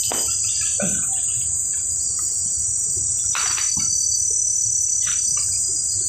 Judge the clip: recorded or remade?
recorded